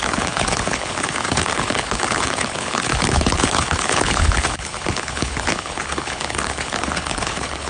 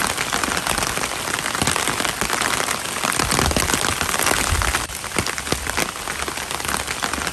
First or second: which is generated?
first